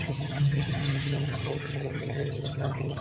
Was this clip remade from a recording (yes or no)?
yes